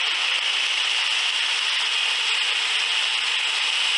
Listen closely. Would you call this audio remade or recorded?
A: recorded